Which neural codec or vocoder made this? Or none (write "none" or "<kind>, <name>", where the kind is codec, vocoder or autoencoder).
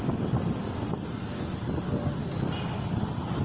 none